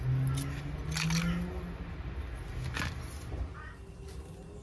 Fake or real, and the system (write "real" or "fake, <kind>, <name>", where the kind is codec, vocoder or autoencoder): real